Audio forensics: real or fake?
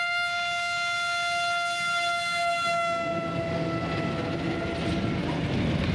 real